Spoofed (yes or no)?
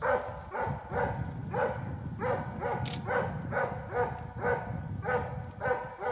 no